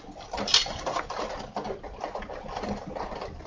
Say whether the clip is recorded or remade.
recorded